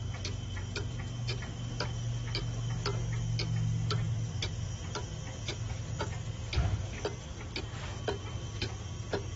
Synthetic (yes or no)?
no